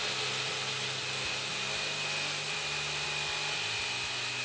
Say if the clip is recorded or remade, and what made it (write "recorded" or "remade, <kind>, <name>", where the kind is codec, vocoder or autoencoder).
recorded